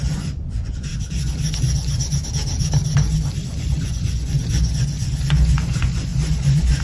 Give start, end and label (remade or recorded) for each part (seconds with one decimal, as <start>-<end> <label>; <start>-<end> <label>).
0.0-0.9 remade; 0.9-1.6 recorded; 1.6-2.2 remade; 2.2-3.4 recorded; 3.4-6.8 remade

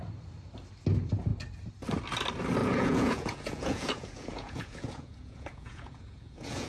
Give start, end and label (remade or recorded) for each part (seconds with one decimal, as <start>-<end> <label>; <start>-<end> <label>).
0.0-2.6 recorded; 2.6-6.7 remade

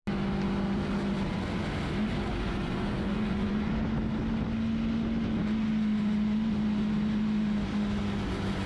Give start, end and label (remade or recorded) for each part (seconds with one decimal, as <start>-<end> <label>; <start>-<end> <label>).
0.0-2.3 recorded; 2.3-3.7 remade; 3.7-8.7 recorded

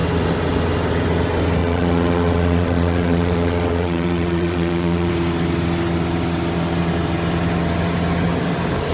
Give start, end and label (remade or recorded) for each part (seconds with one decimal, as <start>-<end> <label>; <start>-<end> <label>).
0.0-1.6 recorded; 1.6-5.1 remade; 5.1-8.9 recorded

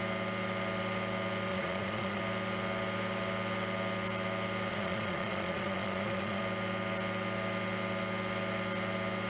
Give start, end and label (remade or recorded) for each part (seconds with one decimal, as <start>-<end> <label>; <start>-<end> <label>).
0.0-1.5 recorded; 1.5-2.2 remade; 2.2-4.7 recorded; 4.7-6.4 remade; 6.4-9.3 recorded

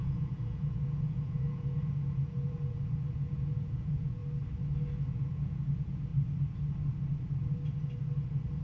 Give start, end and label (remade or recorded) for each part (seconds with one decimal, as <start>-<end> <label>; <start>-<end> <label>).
0.0-4.2 remade; 4.2-5.1 recorded; 5.1-6.1 remade; 6.1-8.6 recorded

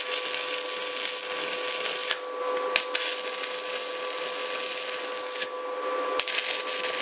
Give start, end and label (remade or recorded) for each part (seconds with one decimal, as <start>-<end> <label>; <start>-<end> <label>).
0.0-7.0 recorded